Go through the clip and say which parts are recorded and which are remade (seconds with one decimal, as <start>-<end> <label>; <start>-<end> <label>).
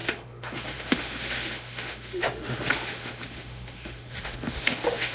0.0-5.1 remade